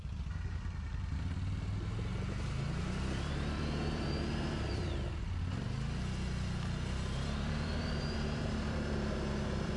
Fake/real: fake